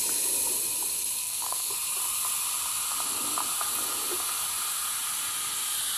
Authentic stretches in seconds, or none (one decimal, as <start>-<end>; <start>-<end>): 0.0-1.2; 1.7-6.0